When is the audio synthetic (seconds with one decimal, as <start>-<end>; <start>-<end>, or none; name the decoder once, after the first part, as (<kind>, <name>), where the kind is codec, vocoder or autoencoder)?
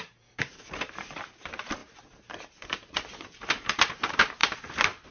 0.0-5.1 (vocoder, BigVGAN v2)